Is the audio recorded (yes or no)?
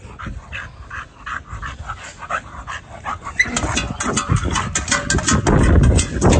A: yes